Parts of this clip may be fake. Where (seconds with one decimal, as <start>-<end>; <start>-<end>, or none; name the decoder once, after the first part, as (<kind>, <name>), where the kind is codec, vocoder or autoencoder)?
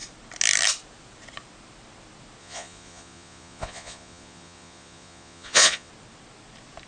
2.4-5.9 (vocoder, Vocos)